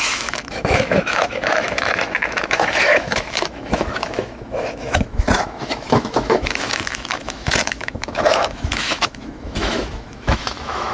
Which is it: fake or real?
fake